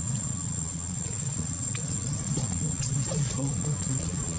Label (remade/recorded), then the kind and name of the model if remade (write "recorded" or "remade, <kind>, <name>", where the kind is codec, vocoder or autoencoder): remade, vocoder, Vocos